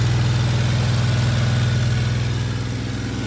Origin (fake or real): real